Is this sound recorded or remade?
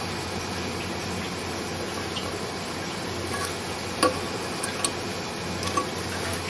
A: recorded